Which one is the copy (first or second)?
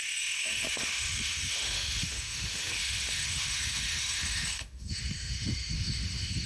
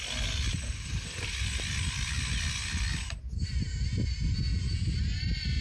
first